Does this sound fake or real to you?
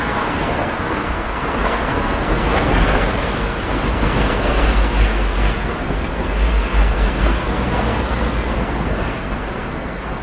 fake